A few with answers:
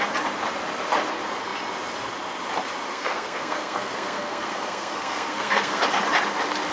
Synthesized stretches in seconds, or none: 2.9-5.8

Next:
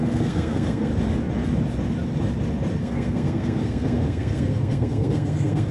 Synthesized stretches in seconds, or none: 0.0-0.9; 2.8-5.7

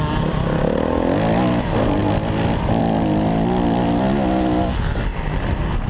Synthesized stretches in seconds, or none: none

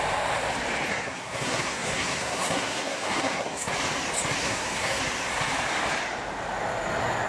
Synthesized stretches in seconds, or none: 0.9-3.7; 4.4-5.0

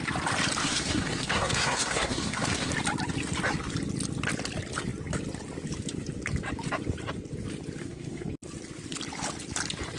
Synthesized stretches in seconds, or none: 0.6-2.7; 7.8-8.3

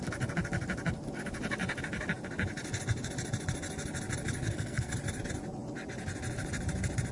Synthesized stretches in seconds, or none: 4.4-4.9

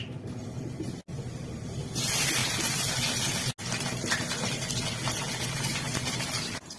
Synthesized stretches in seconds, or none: none

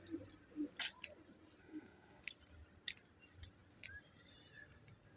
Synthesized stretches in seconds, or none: 1.6-2.2